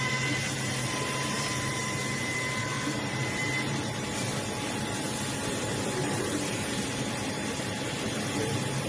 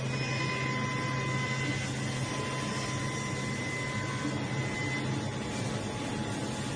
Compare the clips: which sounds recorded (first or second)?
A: second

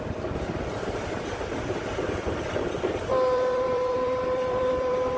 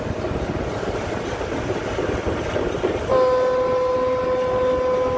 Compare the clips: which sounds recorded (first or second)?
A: second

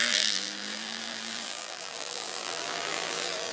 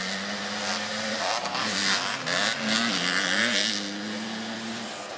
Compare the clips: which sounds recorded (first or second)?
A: second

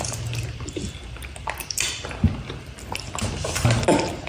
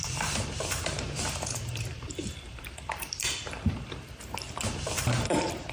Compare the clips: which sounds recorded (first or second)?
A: first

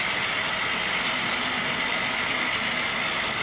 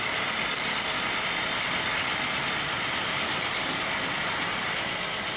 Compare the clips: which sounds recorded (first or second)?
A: first